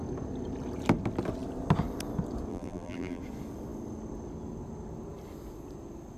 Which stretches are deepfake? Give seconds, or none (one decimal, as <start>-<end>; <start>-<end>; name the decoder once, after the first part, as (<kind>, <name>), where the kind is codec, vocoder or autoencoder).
2.5-3.2 (vocoder, BigVGAN v2)